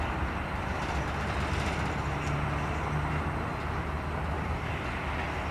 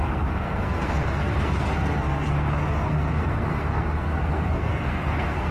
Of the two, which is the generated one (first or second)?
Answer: second